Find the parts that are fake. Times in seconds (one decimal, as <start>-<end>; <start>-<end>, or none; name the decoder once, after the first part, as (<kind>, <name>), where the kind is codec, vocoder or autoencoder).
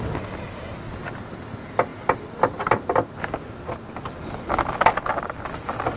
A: none